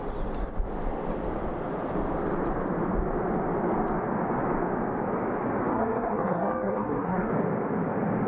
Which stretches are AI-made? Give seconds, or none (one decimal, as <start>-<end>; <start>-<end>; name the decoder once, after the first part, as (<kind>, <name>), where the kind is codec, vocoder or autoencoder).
5.7-7.3 (codec, SNAC)